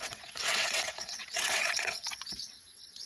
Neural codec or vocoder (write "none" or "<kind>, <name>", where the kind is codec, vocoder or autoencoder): vocoder, WaveNeXt